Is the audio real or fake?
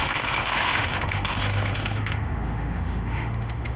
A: fake